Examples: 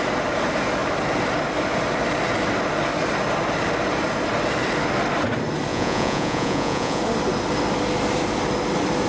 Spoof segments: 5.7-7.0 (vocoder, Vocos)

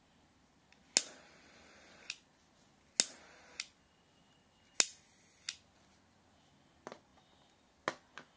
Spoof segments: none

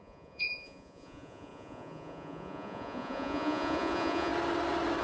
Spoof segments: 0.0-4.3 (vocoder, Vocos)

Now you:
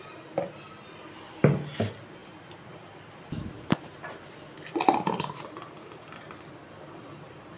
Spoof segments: none

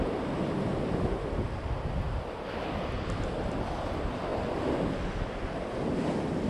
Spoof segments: none